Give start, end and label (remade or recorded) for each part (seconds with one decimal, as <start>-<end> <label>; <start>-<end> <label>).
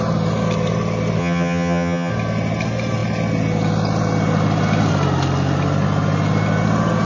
0.0-1.2 recorded; 1.2-2.1 remade; 2.1-7.0 recorded